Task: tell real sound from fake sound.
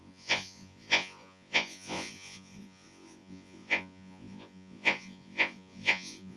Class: fake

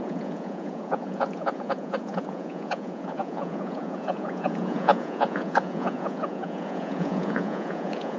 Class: fake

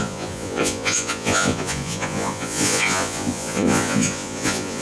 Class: fake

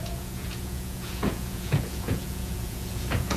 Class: fake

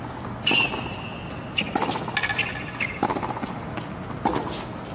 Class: real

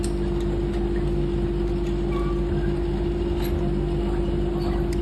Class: real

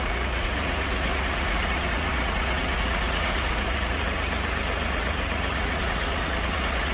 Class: fake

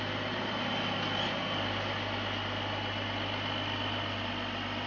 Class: real